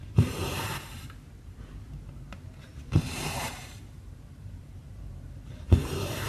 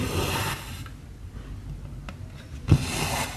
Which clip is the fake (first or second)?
first